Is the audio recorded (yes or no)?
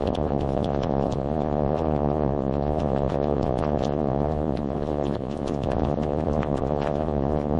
no